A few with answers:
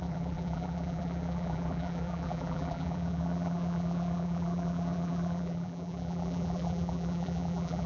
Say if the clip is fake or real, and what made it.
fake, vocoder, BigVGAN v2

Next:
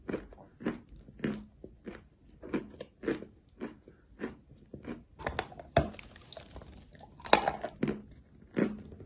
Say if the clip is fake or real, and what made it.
real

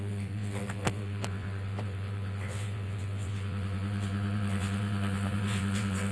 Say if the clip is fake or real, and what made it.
fake, vocoder, WaveNeXt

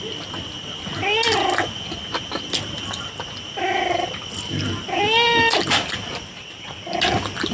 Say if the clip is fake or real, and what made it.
real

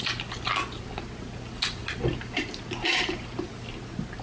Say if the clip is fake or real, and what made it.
real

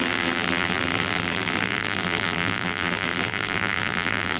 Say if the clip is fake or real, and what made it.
fake, vocoder, BigVGAN v2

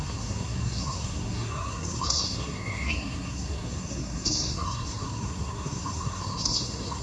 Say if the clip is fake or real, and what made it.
fake, codec, SNAC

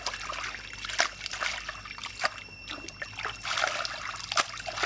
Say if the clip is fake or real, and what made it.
real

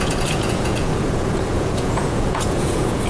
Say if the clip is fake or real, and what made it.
fake, vocoder, Vocos